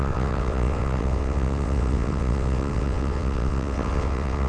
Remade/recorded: remade